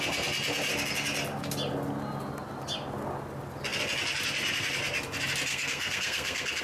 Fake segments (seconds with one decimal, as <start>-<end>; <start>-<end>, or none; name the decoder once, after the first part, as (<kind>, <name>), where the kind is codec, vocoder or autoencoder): 5.5-6.6 (codec, SNAC)